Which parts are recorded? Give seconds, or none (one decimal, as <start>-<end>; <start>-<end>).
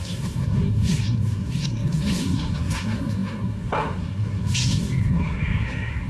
none